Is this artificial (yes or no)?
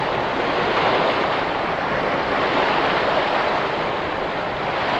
yes